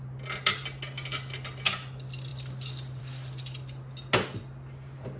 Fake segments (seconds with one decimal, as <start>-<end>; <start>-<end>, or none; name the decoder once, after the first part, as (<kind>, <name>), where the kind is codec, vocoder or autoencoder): none